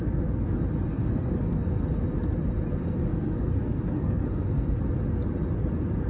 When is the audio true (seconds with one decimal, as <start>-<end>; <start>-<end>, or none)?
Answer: 0.0-0.9; 1.6-2.8; 4.8-6.1